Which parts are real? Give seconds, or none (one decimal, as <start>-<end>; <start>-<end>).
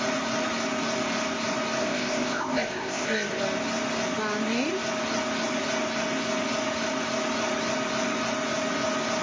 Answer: 0.0-1.8; 3.4-9.2